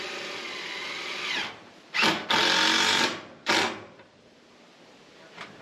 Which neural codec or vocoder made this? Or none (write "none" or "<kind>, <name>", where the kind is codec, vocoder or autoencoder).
none